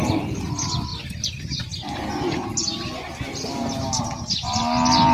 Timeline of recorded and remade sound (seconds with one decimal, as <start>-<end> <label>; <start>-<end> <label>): 0.0-5.1 recorded